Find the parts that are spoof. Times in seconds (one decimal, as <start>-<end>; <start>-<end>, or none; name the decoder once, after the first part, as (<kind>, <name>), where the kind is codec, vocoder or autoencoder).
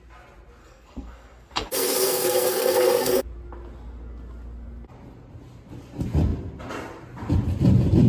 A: 0.6-3.2 (codec, SNAC)